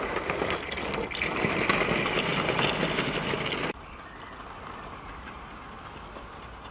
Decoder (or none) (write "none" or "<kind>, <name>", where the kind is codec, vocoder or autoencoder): none